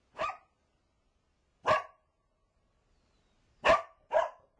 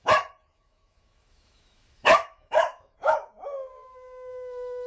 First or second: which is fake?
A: second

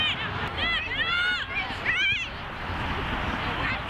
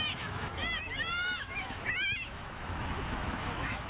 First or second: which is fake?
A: second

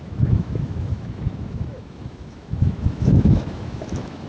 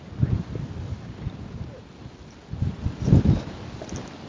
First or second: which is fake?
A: first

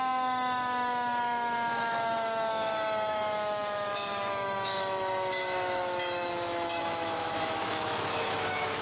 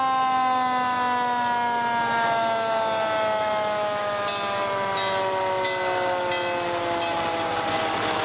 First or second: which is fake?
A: first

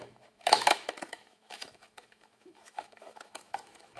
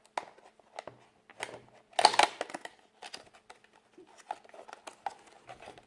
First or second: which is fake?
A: first